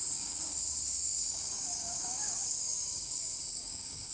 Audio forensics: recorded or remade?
remade